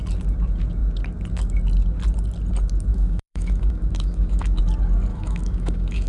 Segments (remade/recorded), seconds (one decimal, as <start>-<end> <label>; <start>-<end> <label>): 0.0-2.9 recorded; 2.9-4.6 remade; 4.6-5.1 recorded; 5.1-6.1 remade